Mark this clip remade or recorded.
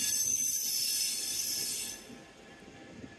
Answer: recorded